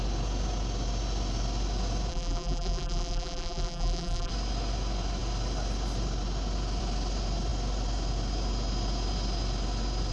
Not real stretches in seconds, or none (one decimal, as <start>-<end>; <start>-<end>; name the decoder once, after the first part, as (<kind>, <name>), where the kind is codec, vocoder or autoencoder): 2.1-4.3 (vocoder, BigVGAN v2)